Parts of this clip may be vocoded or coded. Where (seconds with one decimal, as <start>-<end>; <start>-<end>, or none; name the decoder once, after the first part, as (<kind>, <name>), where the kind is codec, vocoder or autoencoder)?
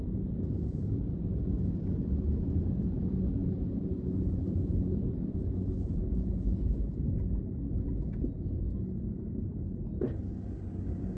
3.4-5.3 (vocoder, BigVGAN v2)